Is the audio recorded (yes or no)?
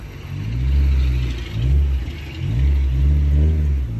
yes